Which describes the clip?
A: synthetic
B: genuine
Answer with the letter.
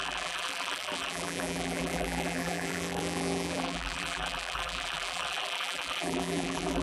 A